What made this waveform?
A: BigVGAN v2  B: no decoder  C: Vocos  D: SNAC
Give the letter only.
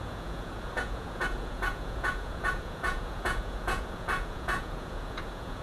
C